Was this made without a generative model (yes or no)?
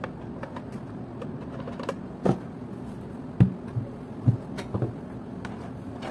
yes